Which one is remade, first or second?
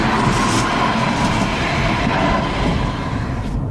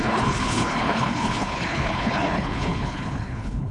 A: second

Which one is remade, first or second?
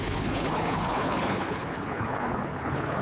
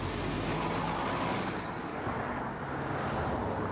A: first